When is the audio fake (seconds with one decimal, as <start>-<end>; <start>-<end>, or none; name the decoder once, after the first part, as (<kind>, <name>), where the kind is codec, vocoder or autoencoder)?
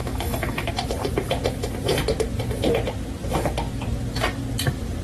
0.0-0.7 (autoencoder, DAC-VAE)